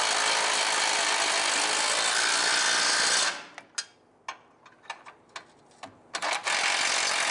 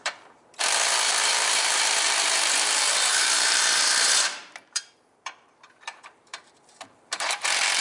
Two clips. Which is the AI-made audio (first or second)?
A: second